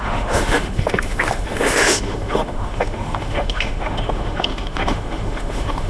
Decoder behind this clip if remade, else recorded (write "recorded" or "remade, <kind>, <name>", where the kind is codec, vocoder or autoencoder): remade, autoencoder, DAC-VAE